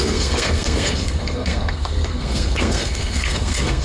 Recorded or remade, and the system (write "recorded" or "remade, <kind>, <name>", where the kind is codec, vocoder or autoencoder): remade, codec, SNAC